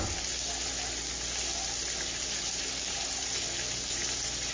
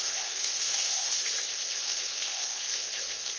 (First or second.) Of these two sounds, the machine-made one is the second